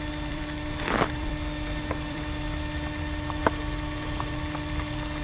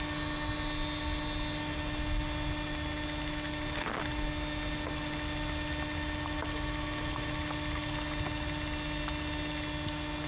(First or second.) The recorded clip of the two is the second